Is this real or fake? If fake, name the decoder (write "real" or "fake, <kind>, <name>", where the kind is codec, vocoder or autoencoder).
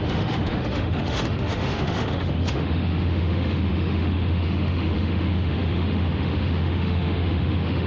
fake, autoencoder, DAC-VAE